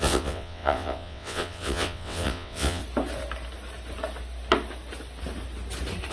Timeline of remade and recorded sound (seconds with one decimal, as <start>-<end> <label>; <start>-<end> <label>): 0.0-2.8 remade; 2.8-6.1 recorded